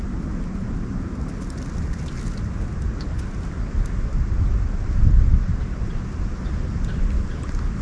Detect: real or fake real